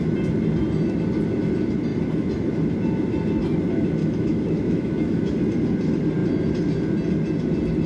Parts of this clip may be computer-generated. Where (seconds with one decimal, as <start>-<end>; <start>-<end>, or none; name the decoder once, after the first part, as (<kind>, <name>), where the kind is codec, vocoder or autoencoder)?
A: 4.0-5.3 (autoencoder, DAC-VAE)